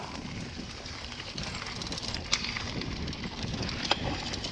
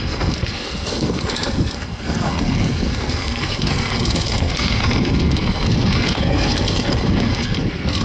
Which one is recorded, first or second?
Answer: first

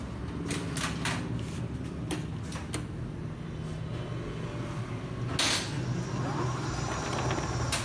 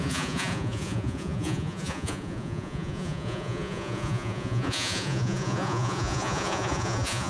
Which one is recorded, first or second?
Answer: first